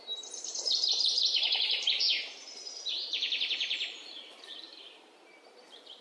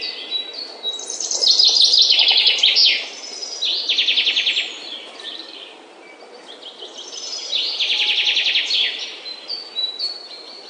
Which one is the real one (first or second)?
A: second